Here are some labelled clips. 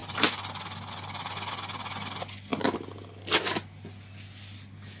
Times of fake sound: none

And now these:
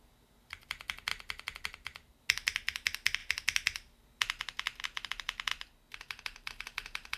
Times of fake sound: 1.1-2.2 (vocoder, BigVGAN v2); 5.5-6.5